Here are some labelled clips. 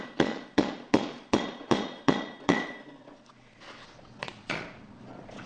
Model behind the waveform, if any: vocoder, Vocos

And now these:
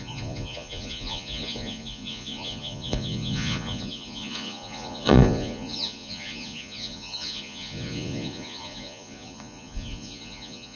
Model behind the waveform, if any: vocoder, Vocos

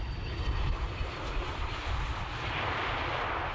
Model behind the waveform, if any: none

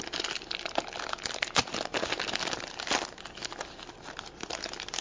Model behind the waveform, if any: none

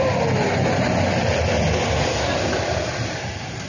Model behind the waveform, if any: none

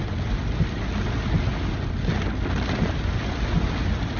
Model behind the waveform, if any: none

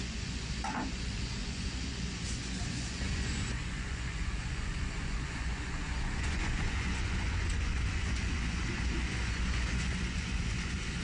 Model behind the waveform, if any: vocoder, Vocos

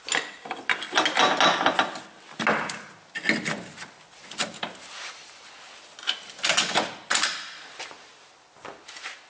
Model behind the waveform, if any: none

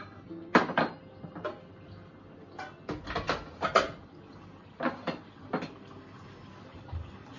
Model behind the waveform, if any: none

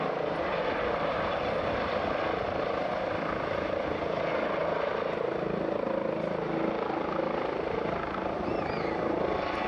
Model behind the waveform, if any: none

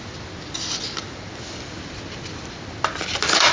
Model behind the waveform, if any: none